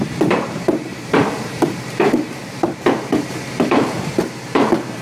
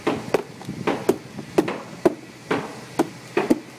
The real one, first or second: second